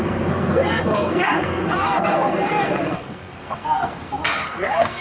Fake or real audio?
fake